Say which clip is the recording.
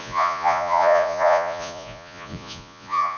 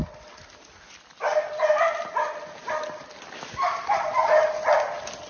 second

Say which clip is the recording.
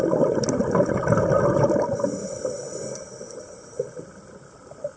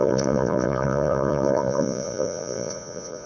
first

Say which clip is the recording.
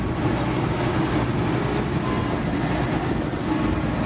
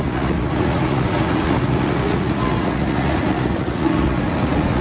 first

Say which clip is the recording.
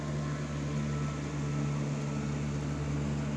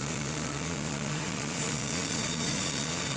first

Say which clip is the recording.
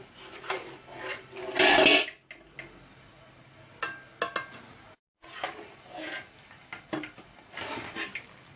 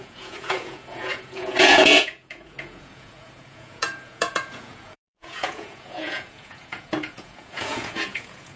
first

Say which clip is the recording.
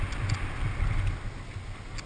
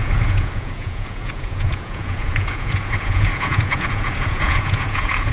first